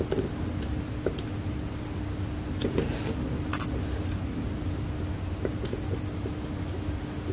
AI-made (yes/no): no